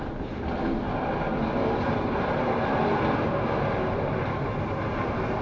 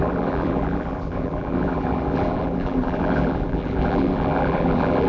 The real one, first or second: first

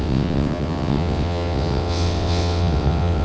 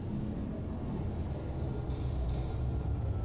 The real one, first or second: second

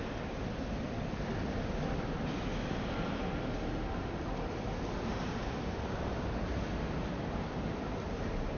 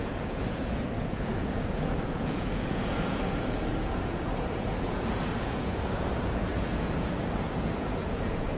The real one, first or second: first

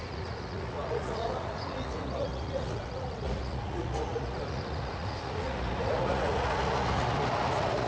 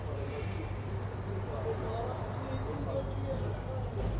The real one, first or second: second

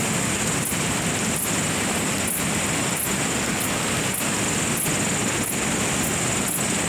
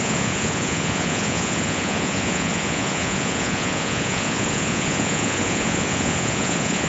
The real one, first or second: first